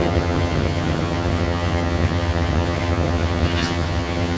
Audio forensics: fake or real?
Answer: fake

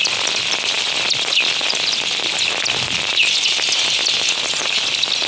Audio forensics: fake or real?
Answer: real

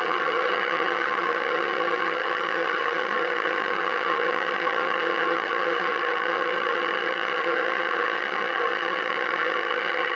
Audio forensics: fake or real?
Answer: fake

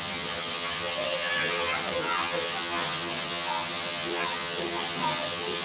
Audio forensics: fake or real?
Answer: fake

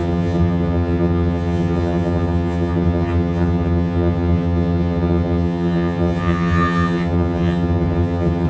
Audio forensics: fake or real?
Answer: fake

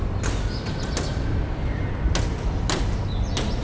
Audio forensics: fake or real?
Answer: real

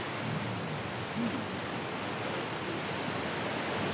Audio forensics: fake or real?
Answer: real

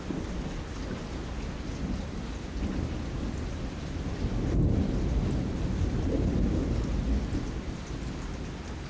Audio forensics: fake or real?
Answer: real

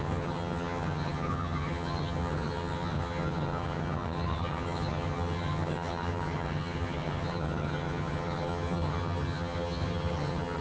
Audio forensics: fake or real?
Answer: fake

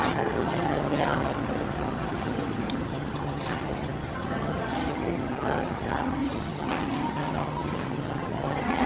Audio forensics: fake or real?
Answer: fake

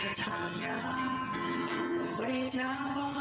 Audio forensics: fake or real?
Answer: fake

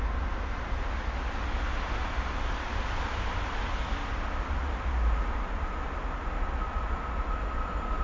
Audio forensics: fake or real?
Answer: real